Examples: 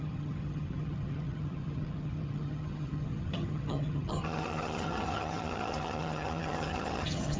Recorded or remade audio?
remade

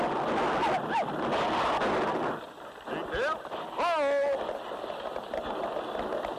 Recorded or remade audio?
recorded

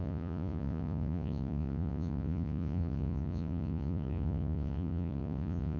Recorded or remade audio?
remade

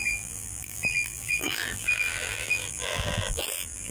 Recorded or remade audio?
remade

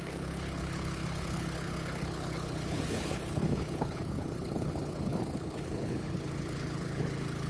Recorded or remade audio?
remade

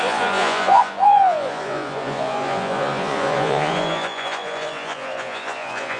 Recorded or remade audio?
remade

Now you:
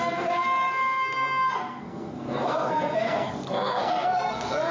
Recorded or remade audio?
remade